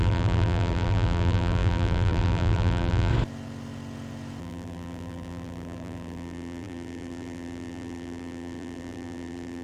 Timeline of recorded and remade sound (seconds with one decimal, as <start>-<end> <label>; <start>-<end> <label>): 0.0-3.1 remade; 3.1-4.4 recorded; 4.4-9.6 remade